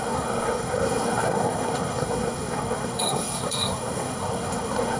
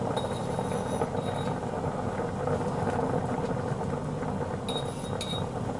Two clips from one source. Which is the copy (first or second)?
first